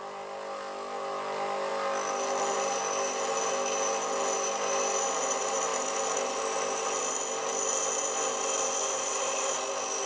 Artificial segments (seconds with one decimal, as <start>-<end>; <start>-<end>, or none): none